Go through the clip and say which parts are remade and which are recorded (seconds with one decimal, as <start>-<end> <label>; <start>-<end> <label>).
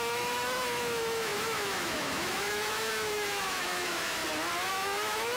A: 0.0-4.2 remade; 4.2-4.7 recorded; 4.7-5.4 remade